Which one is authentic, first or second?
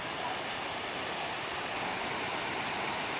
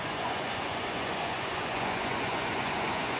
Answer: first